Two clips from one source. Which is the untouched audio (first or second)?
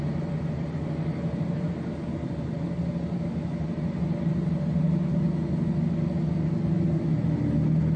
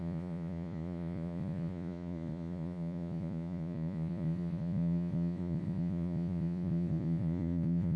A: first